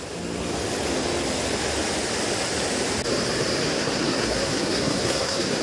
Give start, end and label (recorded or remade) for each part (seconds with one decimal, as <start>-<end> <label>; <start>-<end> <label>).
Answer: 0.0-3.7 recorded; 3.7-5.6 remade